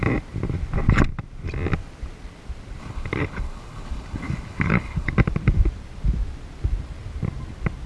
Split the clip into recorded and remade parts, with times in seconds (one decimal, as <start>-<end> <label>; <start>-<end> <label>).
0.0-2.8 recorded; 2.8-5.1 remade; 5.1-7.9 recorded